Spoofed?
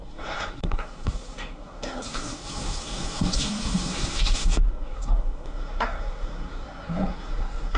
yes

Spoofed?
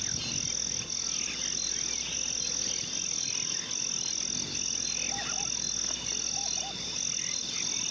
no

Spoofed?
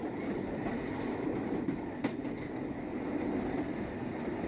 no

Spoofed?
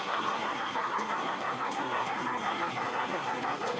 yes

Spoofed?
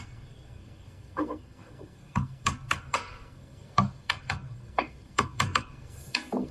yes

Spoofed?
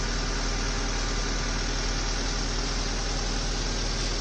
no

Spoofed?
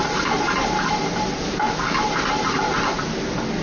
no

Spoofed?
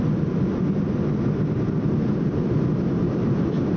no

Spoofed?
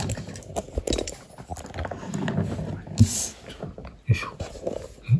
no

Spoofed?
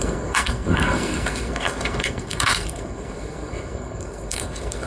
yes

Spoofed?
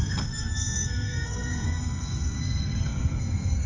yes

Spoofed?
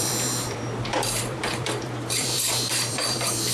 yes